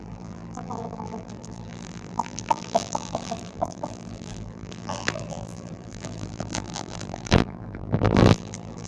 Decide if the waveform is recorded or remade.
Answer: remade